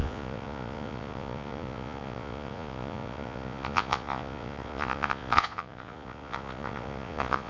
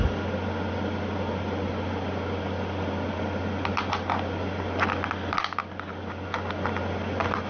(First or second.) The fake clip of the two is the first